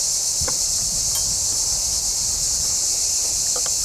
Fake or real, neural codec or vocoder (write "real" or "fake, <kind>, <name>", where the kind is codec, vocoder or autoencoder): real